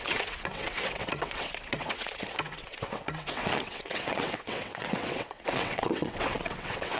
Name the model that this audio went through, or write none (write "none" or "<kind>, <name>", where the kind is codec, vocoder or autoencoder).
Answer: vocoder, WaveNeXt